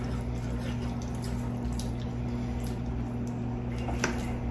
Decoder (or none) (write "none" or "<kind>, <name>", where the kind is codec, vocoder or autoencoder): none